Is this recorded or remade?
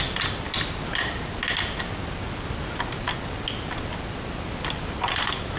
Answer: recorded